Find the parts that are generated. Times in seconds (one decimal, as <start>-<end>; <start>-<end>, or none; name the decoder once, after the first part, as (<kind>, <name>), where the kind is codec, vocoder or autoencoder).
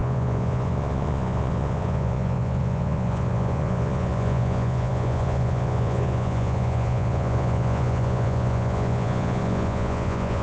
0.0-10.4 (vocoder, Vocos)